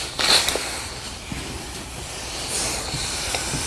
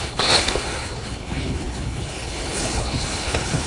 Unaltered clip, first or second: first